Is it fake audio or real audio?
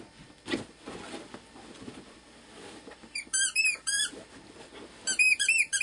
fake